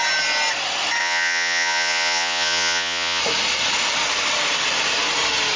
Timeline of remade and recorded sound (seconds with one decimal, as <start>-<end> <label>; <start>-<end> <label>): 0.0-1.0 recorded; 1.0-3.2 remade; 3.2-5.6 recorded